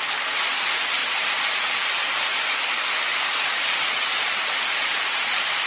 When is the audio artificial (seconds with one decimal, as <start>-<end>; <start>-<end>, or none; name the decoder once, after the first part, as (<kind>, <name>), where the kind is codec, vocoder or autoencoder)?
1.0-2.7 (vocoder, BigVGAN v2); 3.1-4.7